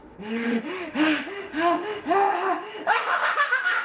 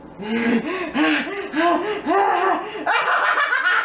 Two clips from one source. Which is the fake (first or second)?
first